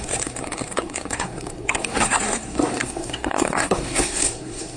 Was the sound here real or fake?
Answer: fake